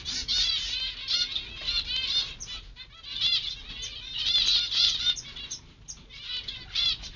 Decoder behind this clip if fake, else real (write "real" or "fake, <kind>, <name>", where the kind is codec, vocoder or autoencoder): real